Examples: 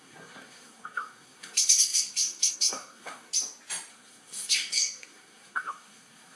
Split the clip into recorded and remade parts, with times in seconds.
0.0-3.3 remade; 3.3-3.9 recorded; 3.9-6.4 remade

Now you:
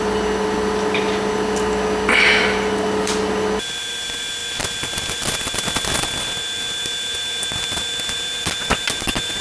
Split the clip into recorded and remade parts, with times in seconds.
0.0-9.4 recorded

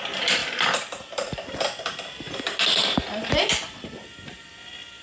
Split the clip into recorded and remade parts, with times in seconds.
0.0-2.8 recorded; 2.8-4.2 remade; 4.2-5.0 recorded

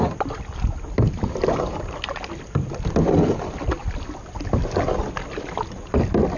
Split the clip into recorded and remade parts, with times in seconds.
0.0-6.4 recorded

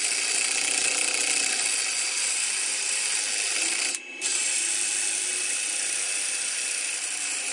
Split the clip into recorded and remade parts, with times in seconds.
0.0-7.5 recorded